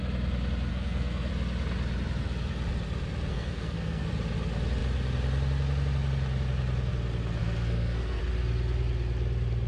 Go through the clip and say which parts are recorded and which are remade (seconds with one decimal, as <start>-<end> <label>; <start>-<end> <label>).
0.0-0.7 recorded; 0.7-1.3 remade; 1.3-3.3 recorded; 3.3-4.1 remade; 4.1-7.4 recorded; 7.4-8.2 remade; 8.2-9.7 recorded